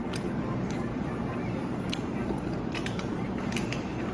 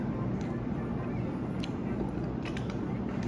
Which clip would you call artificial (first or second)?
first